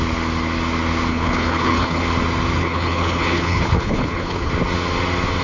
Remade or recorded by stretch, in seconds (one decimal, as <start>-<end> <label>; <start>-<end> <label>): 0.0-1.1 recorded; 1.1-2.0 remade; 2.0-2.6 recorded; 2.6-4.5 remade; 4.5-5.4 recorded